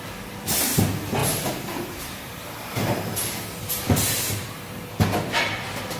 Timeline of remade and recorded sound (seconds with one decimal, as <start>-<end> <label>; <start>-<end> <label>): 0.0-1.2 recorded; 1.2-4.8 remade; 4.8-6.0 recorded